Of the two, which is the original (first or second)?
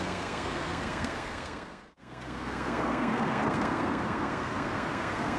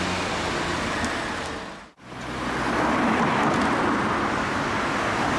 second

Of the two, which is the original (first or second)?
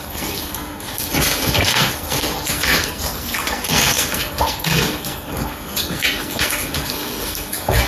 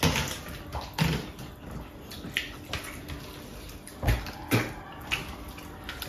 second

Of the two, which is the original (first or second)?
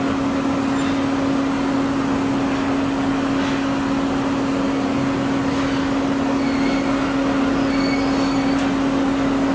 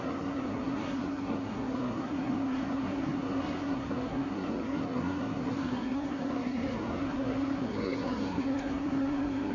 first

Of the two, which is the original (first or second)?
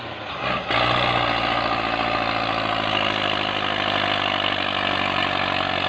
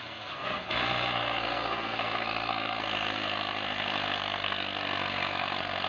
first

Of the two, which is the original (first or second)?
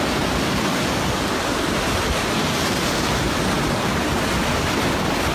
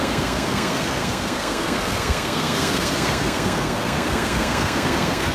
first